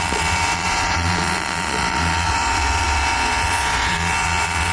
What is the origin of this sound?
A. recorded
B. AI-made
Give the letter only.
B